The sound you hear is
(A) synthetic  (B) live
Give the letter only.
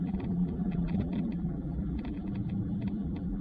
A